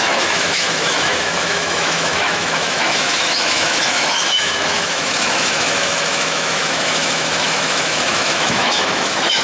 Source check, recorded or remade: remade